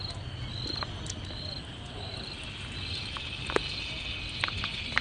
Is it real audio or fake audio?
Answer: real